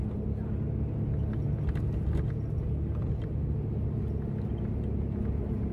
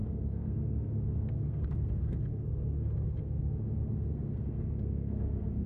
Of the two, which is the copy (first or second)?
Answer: second